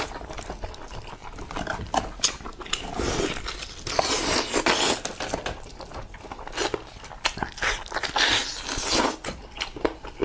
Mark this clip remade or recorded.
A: recorded